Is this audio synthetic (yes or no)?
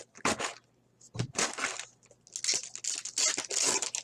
no